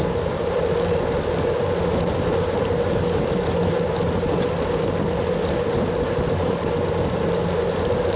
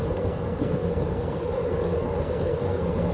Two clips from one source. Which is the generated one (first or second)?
second